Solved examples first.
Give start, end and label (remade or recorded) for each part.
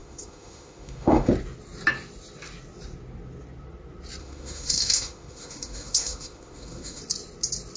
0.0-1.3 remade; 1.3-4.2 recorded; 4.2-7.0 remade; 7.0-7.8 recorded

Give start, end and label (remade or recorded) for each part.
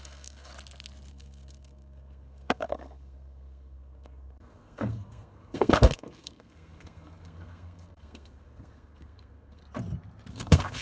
0.0-0.5 remade; 0.5-1.1 recorded; 1.1-9.6 remade; 9.6-10.3 recorded; 10.3-10.8 remade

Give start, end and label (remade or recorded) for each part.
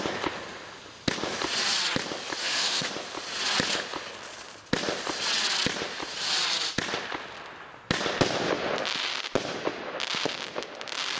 0.0-2.4 recorded; 2.4-2.9 remade; 2.9-11.2 recorded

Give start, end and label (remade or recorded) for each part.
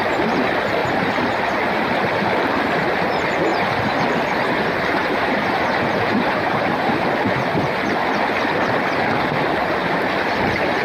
0.0-0.8 recorded; 0.8-2.1 remade; 2.1-3.5 recorded; 3.5-4.0 remade; 4.0-5.0 recorded; 5.0-7.1 remade; 7.1-10.8 recorded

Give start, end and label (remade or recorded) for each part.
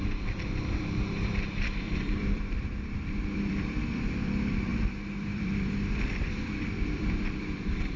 0.0-8.0 remade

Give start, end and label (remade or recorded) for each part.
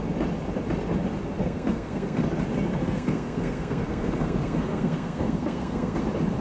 0.0-1.4 recorded; 1.4-2.2 remade; 2.2-2.8 recorded; 2.8-6.0 remade; 6.0-6.4 recorded